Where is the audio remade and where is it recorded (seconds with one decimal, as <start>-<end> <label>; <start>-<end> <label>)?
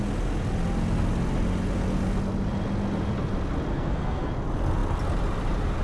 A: 0.0-3.7 recorded; 3.7-4.3 remade; 4.3-5.8 recorded